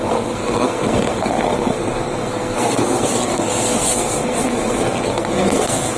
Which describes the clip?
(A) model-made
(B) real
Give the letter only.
A